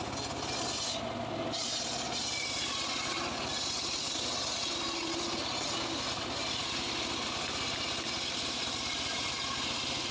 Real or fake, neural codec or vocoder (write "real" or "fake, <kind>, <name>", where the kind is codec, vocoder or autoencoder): real